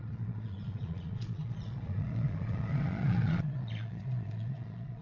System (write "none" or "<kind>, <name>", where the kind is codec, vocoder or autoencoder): vocoder, Vocos